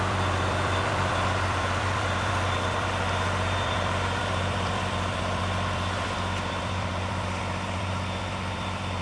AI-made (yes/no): yes